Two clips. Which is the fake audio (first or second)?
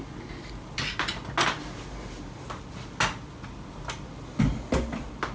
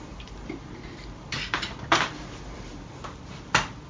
second